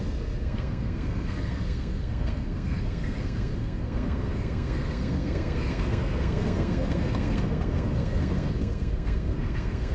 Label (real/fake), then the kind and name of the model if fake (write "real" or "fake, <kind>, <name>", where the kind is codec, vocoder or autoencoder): fake, codec, SNAC